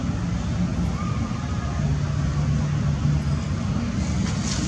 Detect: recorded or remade recorded